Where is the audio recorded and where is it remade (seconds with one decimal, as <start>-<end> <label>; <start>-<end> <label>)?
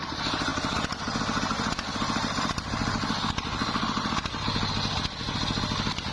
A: 0.0-6.1 recorded